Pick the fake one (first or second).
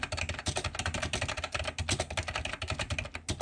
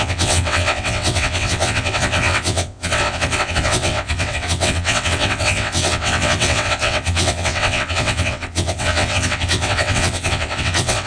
second